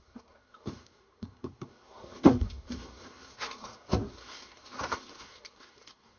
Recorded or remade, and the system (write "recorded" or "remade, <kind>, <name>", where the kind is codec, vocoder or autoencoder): remade, codec, SNAC